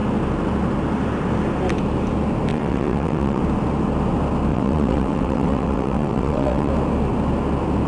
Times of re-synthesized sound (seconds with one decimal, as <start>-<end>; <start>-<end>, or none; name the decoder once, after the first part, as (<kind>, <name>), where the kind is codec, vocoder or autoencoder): 2.5-3.4 (vocoder, WaveNeXt); 4.5-6.7